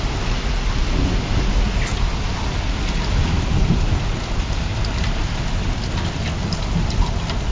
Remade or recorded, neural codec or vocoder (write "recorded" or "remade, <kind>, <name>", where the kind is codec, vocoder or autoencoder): recorded